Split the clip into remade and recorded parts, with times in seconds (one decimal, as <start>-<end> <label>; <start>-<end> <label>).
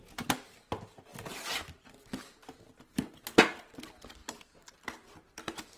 0.0-4.2 recorded; 4.2-5.8 remade